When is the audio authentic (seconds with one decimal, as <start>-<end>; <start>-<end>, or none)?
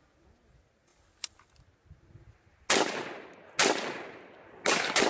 0.0-5.1